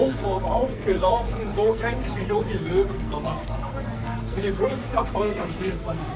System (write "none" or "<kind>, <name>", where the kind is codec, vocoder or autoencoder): codec, SNAC